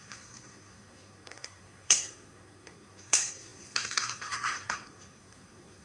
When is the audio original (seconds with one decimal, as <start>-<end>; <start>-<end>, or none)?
none